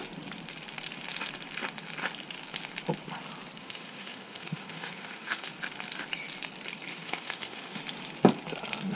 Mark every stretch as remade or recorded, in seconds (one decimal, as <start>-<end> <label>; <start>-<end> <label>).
0.0-3.6 recorded; 3.6-5.5 remade; 5.5-6.9 recorded; 6.9-7.8 remade; 7.8-9.0 recorded